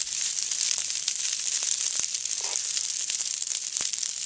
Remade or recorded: remade